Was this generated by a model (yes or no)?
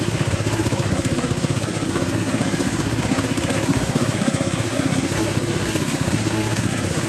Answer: yes